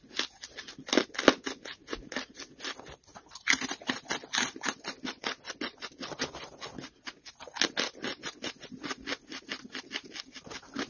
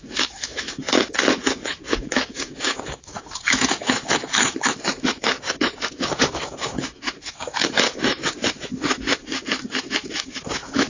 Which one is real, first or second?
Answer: first